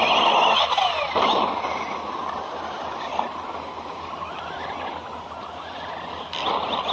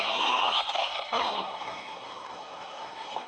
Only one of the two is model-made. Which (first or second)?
second